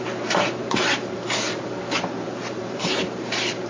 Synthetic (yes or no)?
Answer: yes